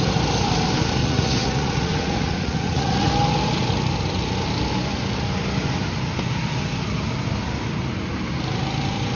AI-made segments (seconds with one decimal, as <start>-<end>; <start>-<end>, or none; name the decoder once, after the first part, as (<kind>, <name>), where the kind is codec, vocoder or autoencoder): 1.0-3.1 (vocoder, Vocos)